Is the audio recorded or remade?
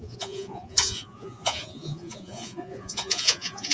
remade